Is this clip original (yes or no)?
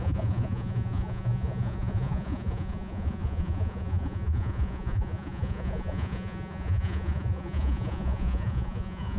no